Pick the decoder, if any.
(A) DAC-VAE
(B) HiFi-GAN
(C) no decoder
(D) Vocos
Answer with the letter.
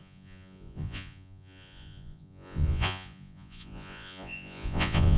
D